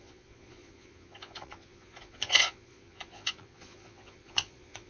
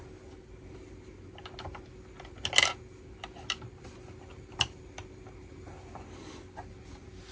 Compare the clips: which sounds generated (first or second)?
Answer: first